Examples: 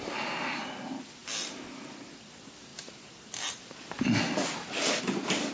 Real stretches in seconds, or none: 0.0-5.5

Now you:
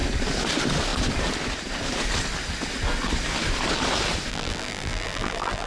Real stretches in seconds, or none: 0.0-4.3

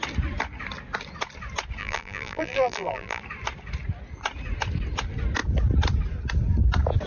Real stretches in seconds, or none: 0.0-1.8; 3.2-7.1

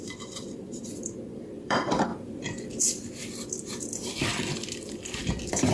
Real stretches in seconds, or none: 3.2-3.8

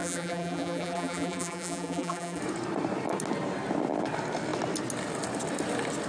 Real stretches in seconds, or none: 2.4-6.1